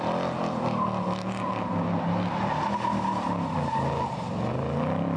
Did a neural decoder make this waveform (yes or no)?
no